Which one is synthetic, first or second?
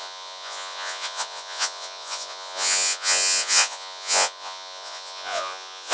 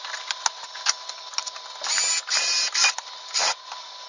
first